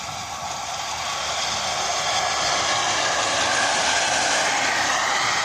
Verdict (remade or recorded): recorded